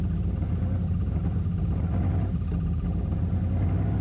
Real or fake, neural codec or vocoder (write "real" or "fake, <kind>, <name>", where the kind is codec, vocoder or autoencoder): fake, vocoder, BigVGAN v2